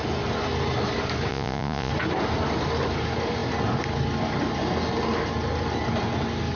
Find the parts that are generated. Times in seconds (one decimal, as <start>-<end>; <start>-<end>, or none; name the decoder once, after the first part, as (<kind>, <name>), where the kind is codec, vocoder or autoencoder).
1.3-1.9 (vocoder, Vocos)